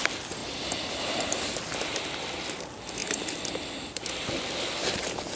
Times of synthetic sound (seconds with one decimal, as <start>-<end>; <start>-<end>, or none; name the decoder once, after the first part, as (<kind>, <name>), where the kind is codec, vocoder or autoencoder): none